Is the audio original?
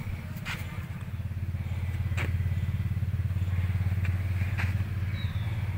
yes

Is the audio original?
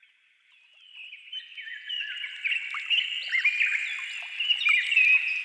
yes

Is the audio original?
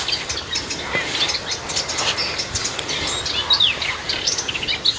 yes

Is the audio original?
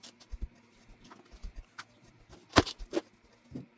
yes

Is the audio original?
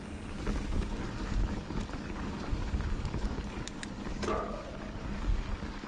no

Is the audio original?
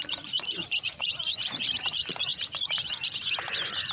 no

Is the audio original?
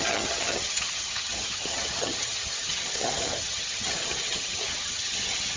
no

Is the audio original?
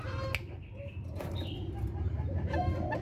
yes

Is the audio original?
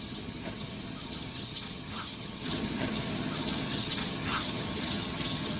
no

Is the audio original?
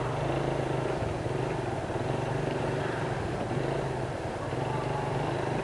yes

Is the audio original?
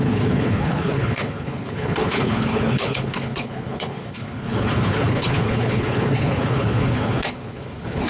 no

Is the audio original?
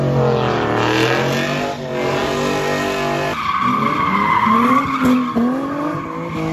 yes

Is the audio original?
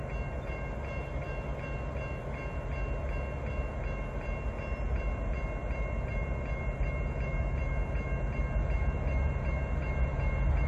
yes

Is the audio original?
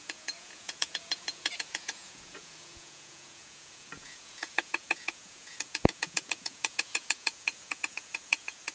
no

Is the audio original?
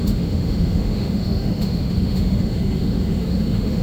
no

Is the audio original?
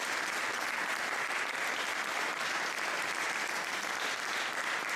yes